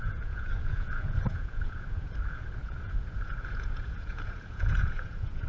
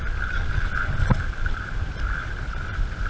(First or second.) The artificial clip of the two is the first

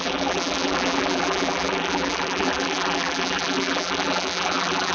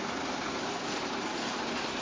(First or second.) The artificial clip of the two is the first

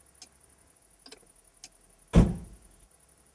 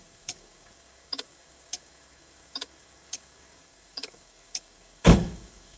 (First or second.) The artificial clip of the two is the second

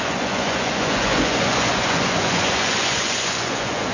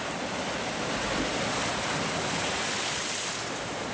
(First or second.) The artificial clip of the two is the first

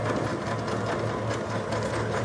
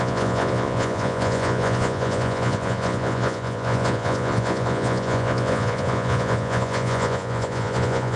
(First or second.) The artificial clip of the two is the second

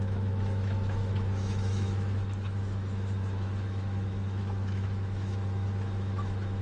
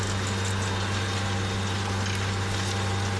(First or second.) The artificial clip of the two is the first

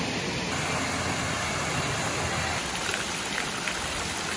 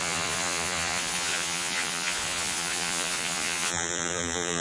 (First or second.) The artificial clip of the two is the second